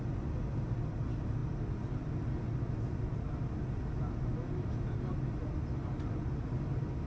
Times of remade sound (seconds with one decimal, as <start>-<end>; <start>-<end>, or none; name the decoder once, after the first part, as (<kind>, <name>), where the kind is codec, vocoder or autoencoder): none